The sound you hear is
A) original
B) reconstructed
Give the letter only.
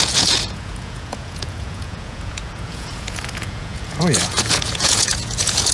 B